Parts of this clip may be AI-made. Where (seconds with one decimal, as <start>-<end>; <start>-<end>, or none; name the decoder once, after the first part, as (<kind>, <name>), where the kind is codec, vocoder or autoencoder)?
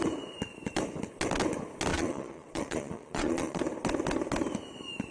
1.9-3.6 (vocoder, Vocos)